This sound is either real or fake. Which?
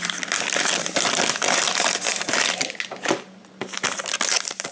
real